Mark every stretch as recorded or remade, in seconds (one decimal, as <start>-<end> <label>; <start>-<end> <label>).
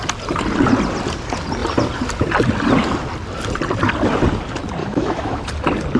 0.0-4.8 recorded; 4.8-5.4 remade; 5.4-6.0 recorded